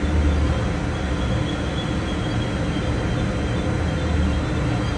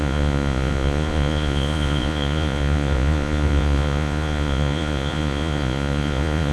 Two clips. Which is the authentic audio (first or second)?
first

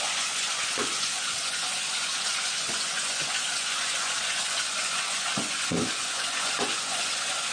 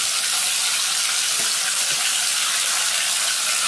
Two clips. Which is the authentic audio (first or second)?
second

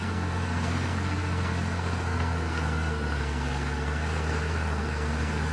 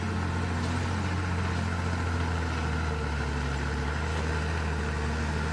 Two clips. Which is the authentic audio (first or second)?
second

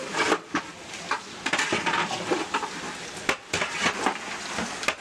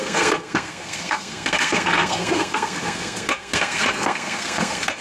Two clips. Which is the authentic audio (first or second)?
first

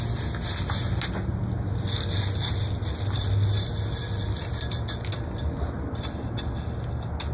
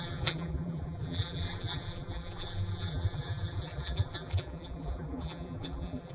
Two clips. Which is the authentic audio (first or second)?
first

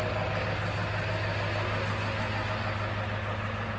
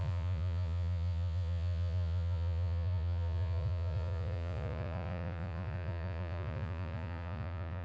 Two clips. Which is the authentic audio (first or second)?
first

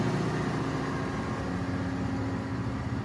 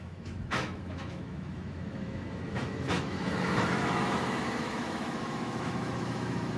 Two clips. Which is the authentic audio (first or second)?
first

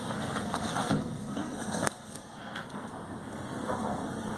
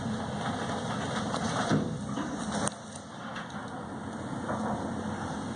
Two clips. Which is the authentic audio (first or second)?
second